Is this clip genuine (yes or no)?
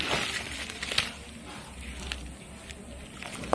yes